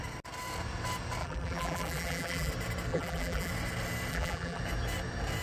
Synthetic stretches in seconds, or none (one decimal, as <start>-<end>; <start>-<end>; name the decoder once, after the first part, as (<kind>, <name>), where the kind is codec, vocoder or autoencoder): 1.2-2.5 (vocoder, BigVGAN v2); 2.9-3.5; 4.1-4.6